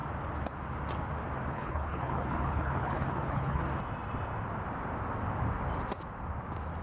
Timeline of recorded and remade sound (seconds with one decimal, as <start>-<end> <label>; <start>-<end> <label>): 0.0-1.5 recorded; 1.5-3.6 remade; 3.6-6.8 recorded